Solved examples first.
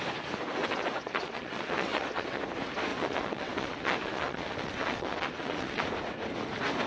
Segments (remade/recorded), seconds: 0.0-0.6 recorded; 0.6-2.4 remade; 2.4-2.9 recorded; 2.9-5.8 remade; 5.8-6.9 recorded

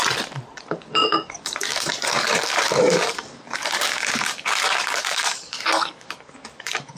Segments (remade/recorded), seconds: 0.0-0.6 recorded; 0.6-7.0 remade

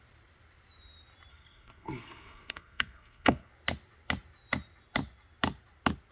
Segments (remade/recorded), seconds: 0.0-1.3 recorded; 1.3-3.5 remade; 3.5-6.1 recorded

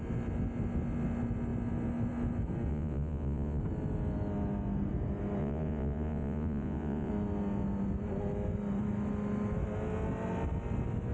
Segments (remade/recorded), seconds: 0.0-2.7 recorded; 2.7-3.6 remade; 3.6-5.4 recorded; 5.4-7.1 remade; 7.1-11.1 recorded

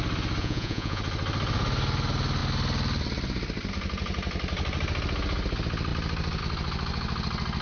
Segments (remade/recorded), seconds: 0.0-0.4 recorded; 0.4-1.0 remade; 1.0-7.6 recorded

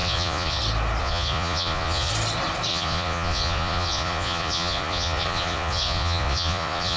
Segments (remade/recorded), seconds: 0.0-0.6 remade; 0.6-1.0 recorded; 1.0-2.1 remade; 2.1-2.7 recorded; 2.7-7.0 remade

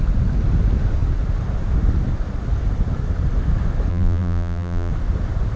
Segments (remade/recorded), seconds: 0.0-3.9 recorded; 3.9-4.9 remade; 4.9-5.6 recorded